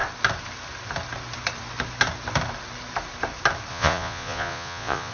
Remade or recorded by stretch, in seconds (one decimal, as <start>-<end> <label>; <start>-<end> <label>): 0.0-3.7 recorded; 3.7-5.1 remade